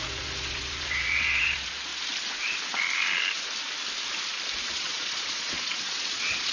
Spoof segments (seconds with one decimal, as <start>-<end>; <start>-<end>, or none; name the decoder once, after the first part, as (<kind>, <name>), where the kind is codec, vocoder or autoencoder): 0.0-1.9 (vocoder, Vocos); 4.7-6.5